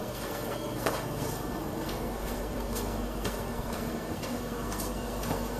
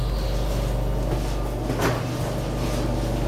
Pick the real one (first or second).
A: second